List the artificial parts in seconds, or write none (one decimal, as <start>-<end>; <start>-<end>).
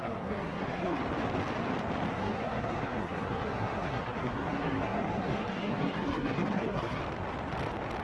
0.0-1.0; 2.1-7.0